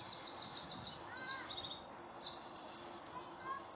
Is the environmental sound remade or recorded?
recorded